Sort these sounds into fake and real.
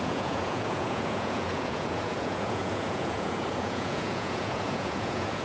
fake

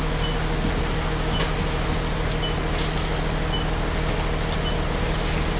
real